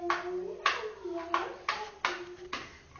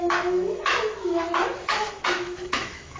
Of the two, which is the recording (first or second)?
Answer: first